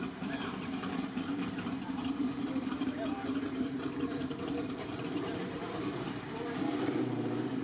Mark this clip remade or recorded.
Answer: remade